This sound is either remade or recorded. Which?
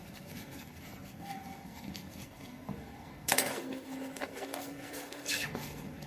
remade